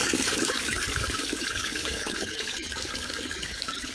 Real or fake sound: fake